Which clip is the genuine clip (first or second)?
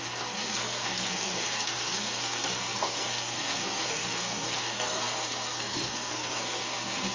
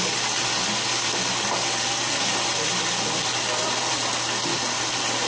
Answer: second